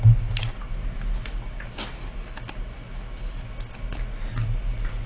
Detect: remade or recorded recorded